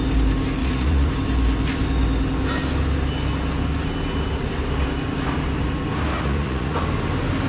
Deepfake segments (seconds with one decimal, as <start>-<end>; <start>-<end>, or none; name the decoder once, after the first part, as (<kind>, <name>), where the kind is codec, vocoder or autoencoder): 0.6-1.1 (vocoder, Vocos); 6.1-6.8